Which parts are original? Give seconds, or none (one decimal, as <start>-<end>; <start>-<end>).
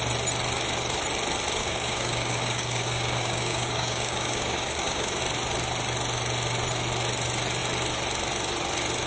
0.0-1.6; 5.2-9.1